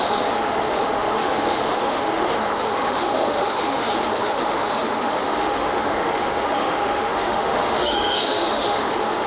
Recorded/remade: remade